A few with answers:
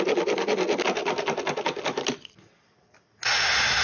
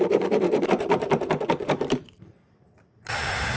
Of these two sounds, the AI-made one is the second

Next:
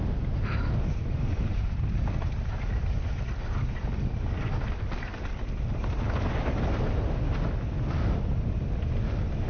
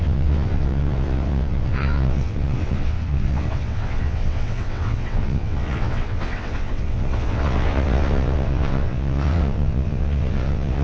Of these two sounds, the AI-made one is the second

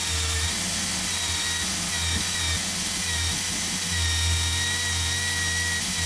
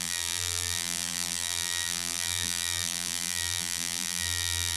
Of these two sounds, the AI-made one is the second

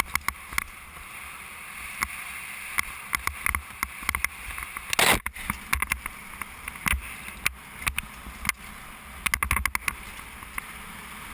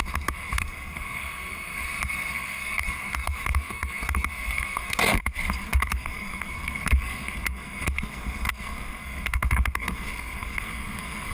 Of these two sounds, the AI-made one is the second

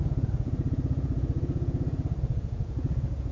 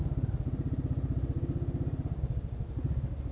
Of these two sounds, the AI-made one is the first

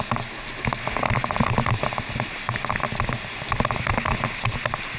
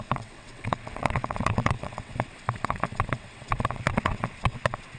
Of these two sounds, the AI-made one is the second